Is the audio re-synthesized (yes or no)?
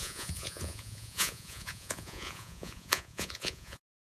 yes